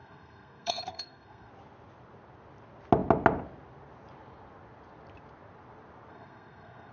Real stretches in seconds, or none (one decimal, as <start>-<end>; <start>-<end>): 1.5-6.1